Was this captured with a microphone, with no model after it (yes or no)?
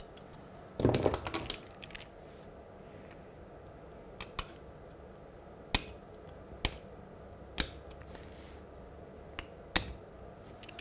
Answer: yes